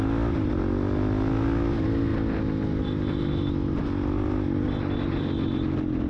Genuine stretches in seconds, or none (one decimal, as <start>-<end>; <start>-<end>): 0.0-6.1